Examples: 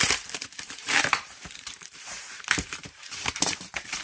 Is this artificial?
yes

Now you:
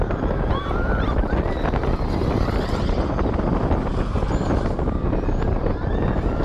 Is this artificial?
no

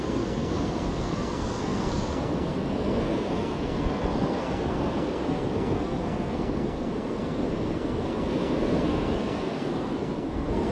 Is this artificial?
yes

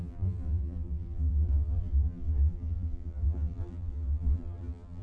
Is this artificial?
yes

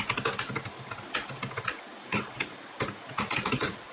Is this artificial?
no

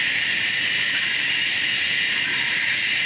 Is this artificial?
no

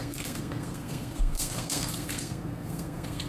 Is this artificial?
yes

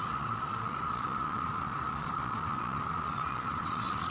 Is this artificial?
yes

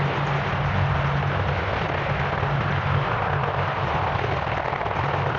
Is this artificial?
no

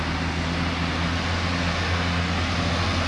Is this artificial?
no